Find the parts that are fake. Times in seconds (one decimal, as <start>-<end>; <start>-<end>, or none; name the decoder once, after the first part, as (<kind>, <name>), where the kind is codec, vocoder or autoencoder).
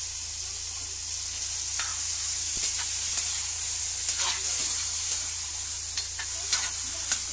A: 1.9-3.8 (vocoder, BigVGAN v2); 4.6-5.5